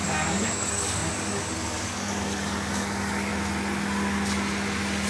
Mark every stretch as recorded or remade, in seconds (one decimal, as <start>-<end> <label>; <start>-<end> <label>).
0.0-3.3 remade; 3.3-5.1 recorded